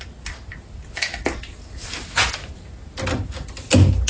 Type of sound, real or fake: real